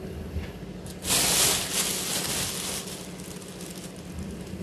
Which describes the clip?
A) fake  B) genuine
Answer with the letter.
B